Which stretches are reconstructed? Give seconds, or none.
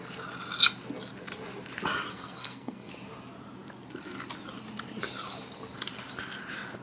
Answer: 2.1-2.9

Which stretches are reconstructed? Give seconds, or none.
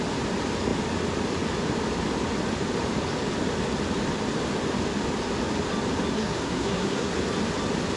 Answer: 6.1-7.1